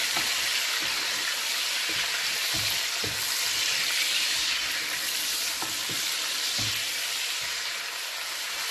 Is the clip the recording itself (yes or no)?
yes